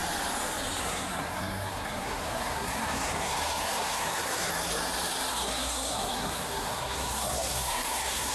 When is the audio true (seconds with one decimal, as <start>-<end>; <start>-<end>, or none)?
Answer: 0.0-0.8; 4.5-5.3